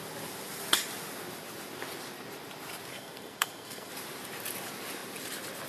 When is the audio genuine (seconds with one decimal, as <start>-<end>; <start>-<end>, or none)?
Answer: 0.0-2.9; 3.9-5.7